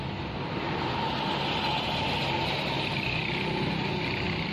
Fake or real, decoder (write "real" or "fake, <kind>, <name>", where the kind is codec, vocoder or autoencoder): real